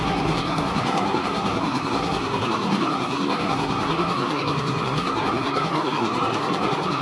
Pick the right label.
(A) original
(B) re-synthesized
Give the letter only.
B